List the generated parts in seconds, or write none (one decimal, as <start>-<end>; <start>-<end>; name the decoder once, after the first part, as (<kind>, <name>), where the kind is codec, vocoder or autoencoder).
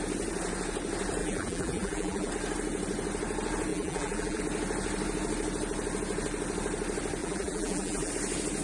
1.2-2.3 (vocoder, BigVGAN v2); 3.7-4.4; 7.2-8.1